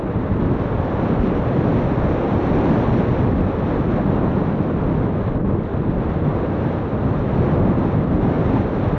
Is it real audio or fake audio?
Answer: real